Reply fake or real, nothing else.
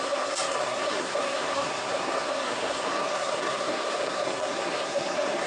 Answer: fake